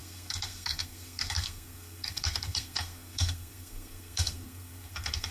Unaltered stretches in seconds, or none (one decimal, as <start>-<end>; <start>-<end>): none